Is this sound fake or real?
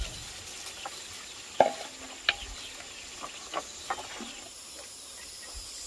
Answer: real